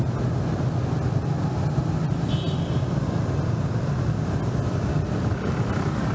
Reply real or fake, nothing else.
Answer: real